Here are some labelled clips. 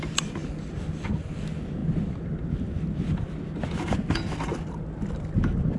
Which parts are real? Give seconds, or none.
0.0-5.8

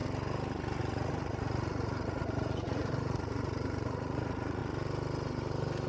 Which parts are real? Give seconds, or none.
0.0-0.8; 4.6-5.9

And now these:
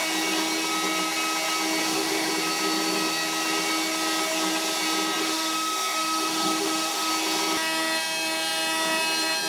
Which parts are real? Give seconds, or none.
0.0-1.8; 2.3-5.2; 7.1-9.5